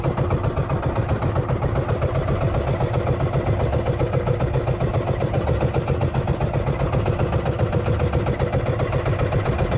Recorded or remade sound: recorded